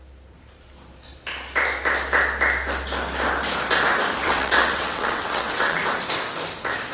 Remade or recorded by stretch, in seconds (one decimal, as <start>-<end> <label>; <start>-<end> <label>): 0.0-4.2 recorded; 4.2-5.8 remade; 5.8-6.9 recorded